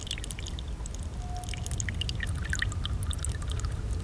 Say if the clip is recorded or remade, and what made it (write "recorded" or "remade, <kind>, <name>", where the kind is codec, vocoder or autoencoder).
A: recorded